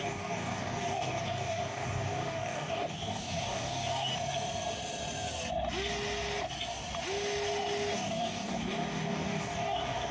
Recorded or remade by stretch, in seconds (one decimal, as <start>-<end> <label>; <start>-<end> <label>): 0.0-4.1 remade; 4.1-7.9 recorded; 7.9-10.1 remade